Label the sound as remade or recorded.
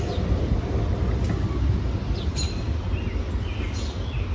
recorded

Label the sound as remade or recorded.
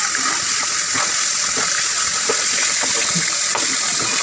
recorded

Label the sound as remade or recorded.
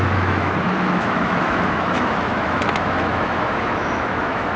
remade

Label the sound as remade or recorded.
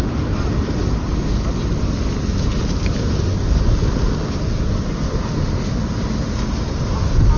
recorded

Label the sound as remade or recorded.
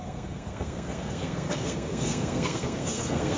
remade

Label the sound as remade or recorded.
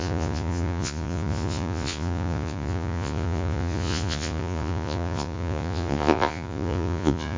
remade